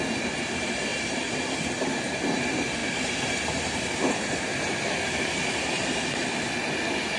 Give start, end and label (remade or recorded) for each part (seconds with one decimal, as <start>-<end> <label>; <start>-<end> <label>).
0.0-0.9 recorded; 0.9-1.5 remade; 1.5-7.2 recorded

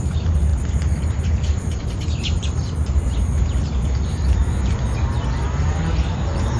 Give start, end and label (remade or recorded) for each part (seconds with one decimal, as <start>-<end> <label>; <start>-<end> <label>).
0.0-4.4 remade; 4.4-6.1 recorded; 6.1-6.6 remade